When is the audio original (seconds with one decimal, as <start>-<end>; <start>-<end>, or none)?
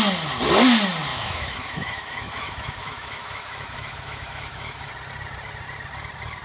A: 0.0-1.1; 4.9-6.4